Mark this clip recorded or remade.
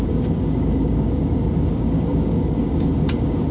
remade